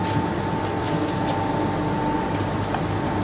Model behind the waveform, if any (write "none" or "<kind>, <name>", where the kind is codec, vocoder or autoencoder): none